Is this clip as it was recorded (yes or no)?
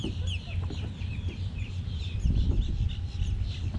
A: no